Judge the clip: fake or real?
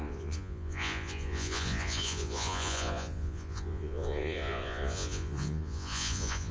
fake